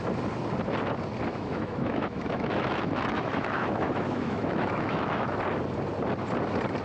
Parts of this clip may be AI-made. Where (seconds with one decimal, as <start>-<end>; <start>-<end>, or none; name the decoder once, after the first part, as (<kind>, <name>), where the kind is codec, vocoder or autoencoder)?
1.3-5.4 (autoencoder, DAC-VAE)